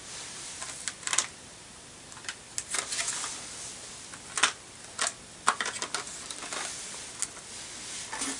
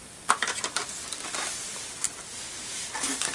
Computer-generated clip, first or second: second